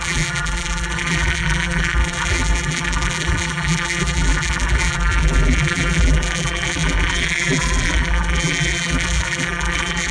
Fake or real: fake